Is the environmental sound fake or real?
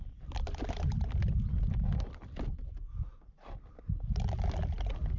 real